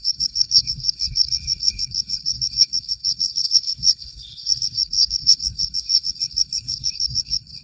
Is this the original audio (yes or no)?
no